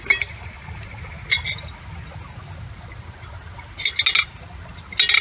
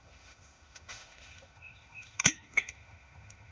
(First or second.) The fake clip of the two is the second